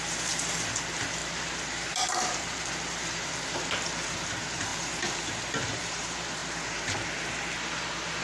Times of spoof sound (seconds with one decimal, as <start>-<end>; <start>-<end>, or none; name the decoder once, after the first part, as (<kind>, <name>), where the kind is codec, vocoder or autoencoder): 0.0-8.2 (vocoder, BigVGAN v2)